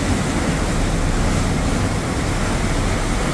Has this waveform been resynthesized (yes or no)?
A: no